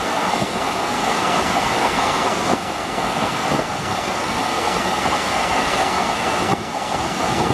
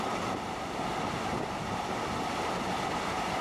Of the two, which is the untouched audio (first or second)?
second